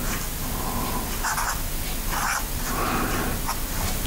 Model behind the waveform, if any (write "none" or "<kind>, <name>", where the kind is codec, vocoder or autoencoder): none